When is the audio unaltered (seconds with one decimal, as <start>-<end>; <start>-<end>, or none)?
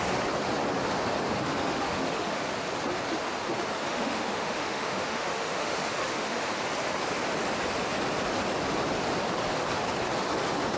0.0-1.5; 2.4-3.9; 6.5-10.8